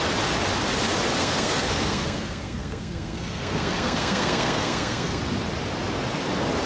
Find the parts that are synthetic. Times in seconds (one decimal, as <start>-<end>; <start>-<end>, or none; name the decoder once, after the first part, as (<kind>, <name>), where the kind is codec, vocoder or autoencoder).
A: 1.2-5.2 (codec, SNAC)